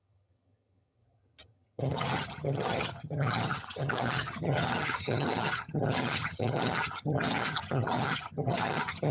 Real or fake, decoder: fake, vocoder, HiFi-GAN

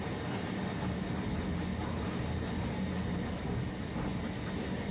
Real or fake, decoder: real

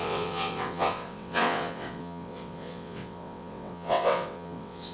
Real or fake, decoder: fake, vocoder, WaveNeXt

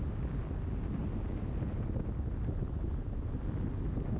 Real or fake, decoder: real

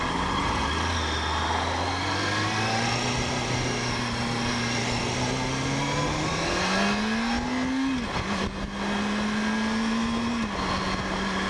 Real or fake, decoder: real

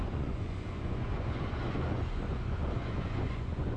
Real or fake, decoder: fake, vocoder, Vocos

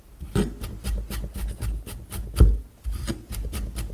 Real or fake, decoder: real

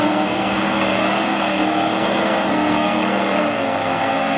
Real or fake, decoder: fake, codec, SNAC